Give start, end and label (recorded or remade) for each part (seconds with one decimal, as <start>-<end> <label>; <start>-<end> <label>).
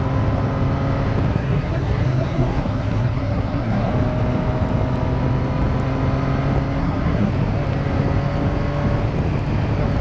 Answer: 0.0-1.3 recorded; 1.3-3.9 remade; 3.9-6.8 recorded; 6.8-7.3 remade; 7.3-10.0 recorded